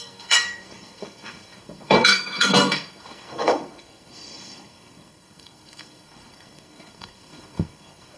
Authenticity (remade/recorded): remade